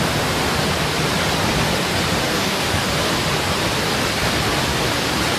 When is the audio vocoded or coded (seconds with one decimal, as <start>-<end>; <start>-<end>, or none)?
2.3-2.8